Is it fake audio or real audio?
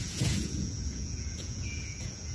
fake